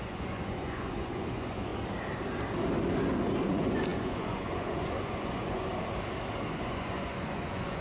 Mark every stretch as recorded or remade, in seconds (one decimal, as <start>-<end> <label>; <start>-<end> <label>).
0.0-1.7 remade; 1.7-3.5 recorded; 3.5-5.7 remade; 5.7-6.5 recorded; 6.5-7.8 remade